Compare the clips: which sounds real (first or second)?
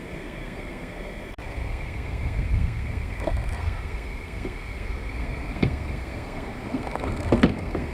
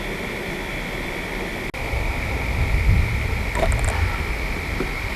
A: second